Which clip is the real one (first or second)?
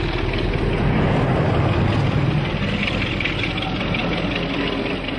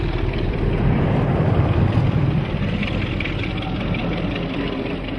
first